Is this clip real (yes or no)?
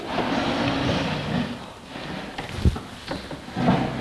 yes